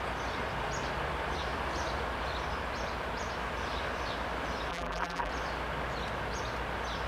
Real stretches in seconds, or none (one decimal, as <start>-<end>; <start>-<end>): 0.0-4.7; 5.3-7.1